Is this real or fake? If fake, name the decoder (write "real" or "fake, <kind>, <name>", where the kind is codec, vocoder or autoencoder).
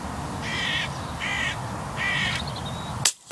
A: real